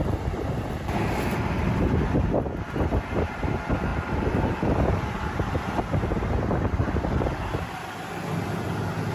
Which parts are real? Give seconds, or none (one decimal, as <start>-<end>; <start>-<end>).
none